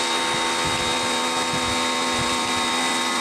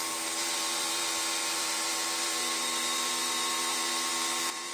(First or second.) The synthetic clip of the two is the second